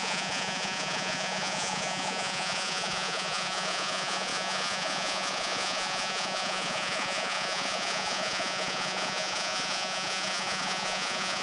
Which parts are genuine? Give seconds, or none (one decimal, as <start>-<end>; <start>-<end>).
none